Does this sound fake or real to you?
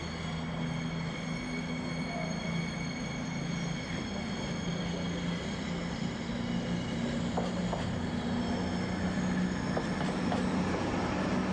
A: real